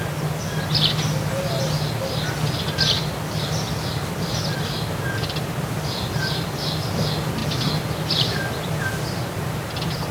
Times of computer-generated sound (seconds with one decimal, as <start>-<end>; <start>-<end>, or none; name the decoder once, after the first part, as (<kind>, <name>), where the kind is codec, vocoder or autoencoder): none